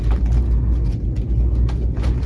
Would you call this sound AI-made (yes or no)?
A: no